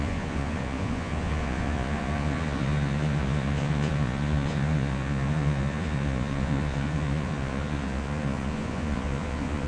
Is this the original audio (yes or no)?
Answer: no